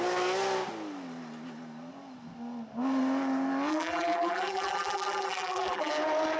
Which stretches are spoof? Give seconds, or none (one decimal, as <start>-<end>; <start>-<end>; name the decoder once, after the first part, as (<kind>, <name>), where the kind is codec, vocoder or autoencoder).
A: 3.7-5.9 (vocoder, BigVGAN v2)